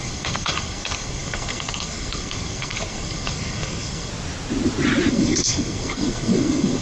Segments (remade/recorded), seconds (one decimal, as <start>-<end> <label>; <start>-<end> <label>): 0.0-4.1 remade; 4.1-5.1 recorded; 5.1-6.8 remade